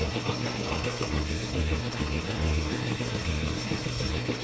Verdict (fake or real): fake